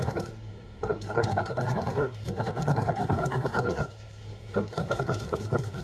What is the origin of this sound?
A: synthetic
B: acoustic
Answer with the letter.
A